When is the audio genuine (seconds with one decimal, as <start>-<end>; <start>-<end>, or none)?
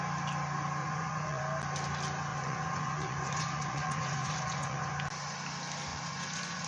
0.0-0.8; 1.4-2.3; 4.9-5.9